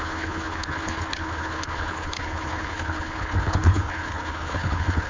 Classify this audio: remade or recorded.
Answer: remade